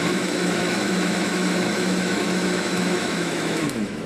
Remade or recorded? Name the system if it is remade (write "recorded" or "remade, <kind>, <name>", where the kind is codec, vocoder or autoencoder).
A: remade, autoencoder, DAC-VAE